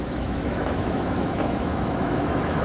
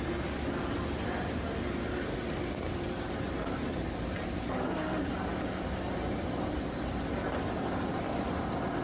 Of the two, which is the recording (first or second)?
second